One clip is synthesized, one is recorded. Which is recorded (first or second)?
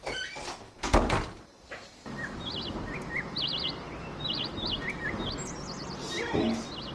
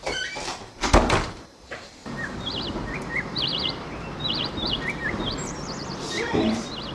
first